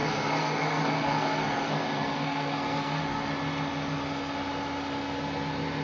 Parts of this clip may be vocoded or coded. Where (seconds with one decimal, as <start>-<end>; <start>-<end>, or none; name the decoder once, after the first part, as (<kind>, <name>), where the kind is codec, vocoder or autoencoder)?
0.0-3.3 (codec, SNAC)